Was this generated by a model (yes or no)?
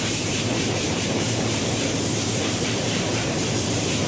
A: yes